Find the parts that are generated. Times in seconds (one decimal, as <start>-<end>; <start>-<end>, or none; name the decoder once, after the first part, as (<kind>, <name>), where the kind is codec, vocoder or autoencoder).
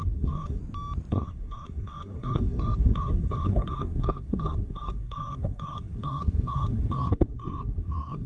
0.0-0.6 (codec, SNAC); 1.1-8.3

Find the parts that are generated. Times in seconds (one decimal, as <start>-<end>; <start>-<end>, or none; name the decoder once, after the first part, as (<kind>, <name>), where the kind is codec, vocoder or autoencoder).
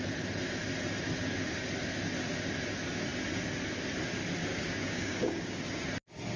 4.5-5.7 (codec, DAC)